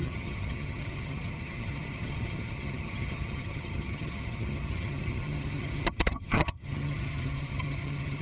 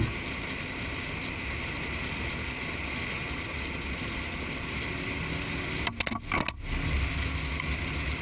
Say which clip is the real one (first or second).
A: second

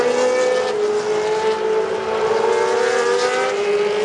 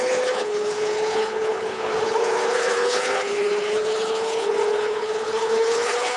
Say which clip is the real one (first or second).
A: first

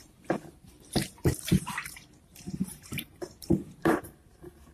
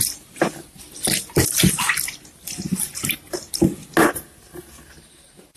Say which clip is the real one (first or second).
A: second